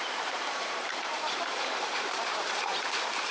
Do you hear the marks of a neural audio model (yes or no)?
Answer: yes